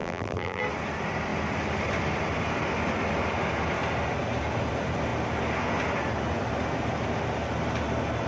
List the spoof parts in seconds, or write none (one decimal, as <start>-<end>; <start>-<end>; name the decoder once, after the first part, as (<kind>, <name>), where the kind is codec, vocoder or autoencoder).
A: 0.0-0.6 (vocoder, BigVGAN v2)